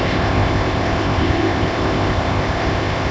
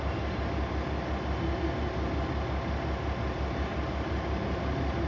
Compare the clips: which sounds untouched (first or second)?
second